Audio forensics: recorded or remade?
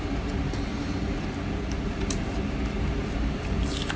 remade